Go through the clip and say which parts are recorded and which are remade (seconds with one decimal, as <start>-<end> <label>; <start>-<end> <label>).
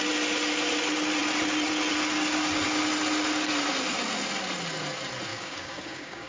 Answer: 0.0-5.3 recorded; 5.3-6.3 remade